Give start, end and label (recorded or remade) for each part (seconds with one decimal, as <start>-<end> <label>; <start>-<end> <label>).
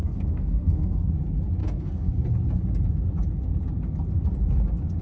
0.0-1.1 remade; 1.1-1.6 recorded; 1.6-2.1 remade; 2.1-5.0 recorded